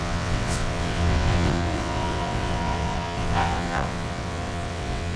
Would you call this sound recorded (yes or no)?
no